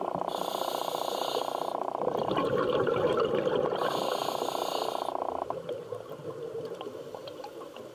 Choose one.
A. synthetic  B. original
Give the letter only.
B